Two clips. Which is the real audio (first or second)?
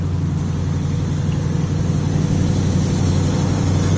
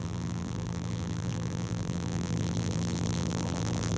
first